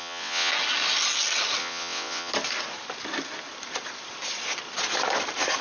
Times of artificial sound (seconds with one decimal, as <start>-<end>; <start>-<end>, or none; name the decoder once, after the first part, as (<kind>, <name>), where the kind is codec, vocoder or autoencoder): 0.0-0.5 (vocoder, WaveNeXt); 1.6-2.3